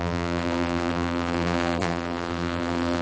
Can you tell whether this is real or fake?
fake